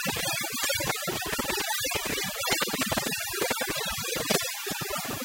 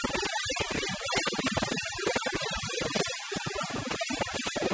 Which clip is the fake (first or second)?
first